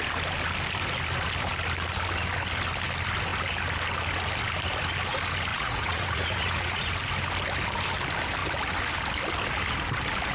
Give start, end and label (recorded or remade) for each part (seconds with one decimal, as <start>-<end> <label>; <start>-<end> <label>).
0.0-5.5 recorded; 5.5-6.9 remade; 6.9-10.3 recorded